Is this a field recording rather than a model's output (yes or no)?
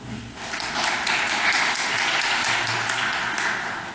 yes